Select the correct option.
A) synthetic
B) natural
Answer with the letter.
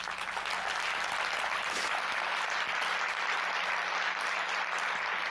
B